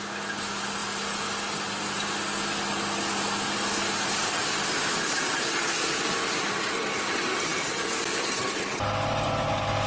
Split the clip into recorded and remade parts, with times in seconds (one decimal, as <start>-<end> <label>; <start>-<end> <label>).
0.0-9.9 recorded